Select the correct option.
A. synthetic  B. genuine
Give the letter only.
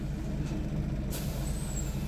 B